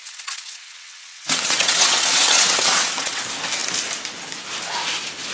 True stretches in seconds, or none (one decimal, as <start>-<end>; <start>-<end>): 3.2-5.3